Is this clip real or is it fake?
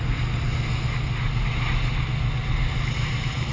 real